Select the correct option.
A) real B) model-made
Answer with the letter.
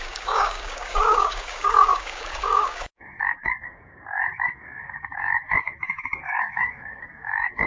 B